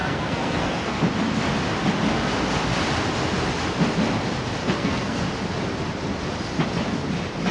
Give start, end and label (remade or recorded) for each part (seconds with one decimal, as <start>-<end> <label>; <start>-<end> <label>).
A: 0.0-1.0 remade; 1.0-4.6 recorded; 4.6-5.2 remade; 5.2-7.5 recorded